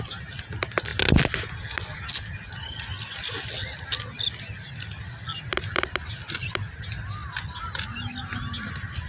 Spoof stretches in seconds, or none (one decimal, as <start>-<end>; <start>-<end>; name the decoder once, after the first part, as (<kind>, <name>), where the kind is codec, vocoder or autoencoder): none